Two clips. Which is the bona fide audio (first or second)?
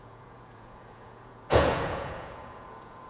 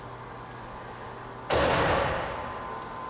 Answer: second